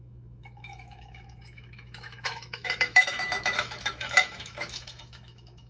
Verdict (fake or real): fake